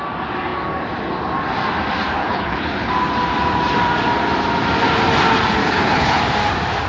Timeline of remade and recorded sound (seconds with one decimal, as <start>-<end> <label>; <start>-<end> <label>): 0.0-2.2 recorded; 2.2-2.9 remade; 2.9-5.6 recorded; 5.6-6.2 remade; 6.2-6.9 recorded